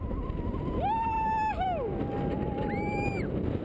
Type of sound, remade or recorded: recorded